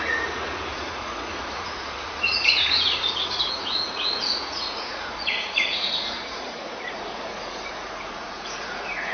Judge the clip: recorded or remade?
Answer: remade